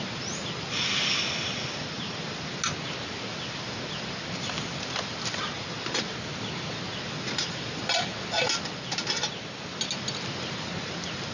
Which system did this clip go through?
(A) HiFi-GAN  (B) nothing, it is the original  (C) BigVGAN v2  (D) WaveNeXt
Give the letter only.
B